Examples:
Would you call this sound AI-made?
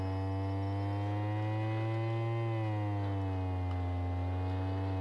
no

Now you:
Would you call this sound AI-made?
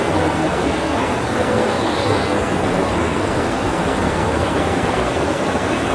yes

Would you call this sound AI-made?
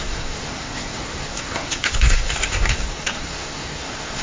yes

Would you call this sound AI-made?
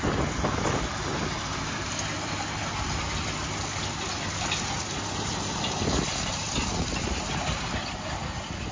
no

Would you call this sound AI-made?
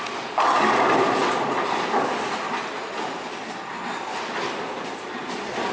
no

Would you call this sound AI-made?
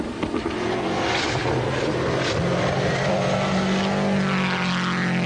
no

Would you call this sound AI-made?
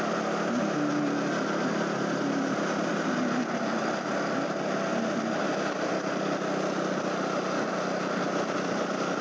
no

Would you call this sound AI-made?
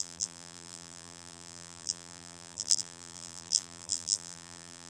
yes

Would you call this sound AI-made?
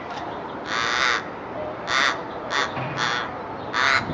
no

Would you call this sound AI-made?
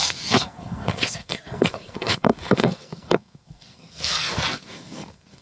yes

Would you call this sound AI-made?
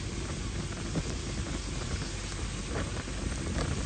no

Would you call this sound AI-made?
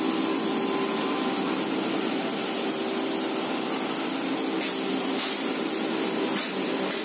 no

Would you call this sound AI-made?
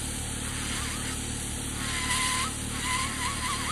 no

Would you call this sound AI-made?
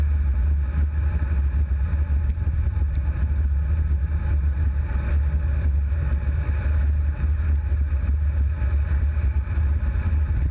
no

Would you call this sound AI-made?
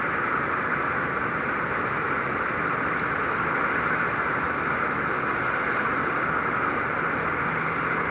no